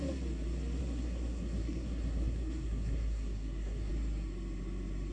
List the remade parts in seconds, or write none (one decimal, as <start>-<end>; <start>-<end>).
0.8-3.9